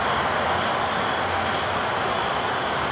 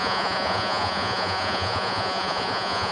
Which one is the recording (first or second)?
first